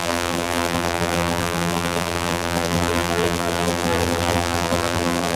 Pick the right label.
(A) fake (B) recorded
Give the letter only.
A